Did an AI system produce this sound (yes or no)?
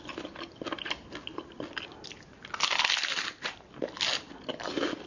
no